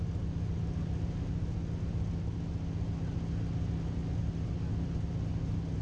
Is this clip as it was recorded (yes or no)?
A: yes